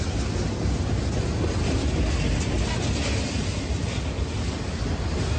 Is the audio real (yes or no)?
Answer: yes